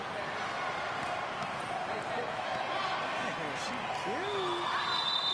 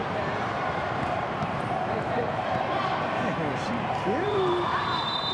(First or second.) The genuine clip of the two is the first